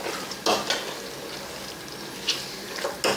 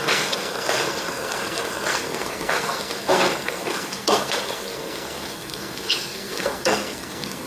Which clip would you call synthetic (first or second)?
second